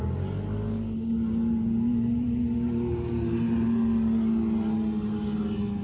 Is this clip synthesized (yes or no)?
no